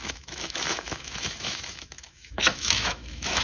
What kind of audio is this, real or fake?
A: fake